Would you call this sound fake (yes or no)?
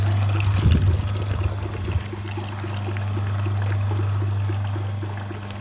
no